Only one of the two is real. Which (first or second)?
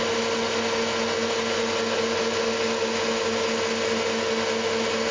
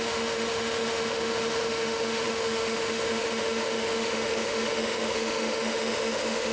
first